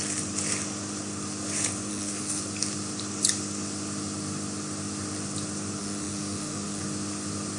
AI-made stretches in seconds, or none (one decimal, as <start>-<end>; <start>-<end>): 1.9-2.4; 5.8-6.8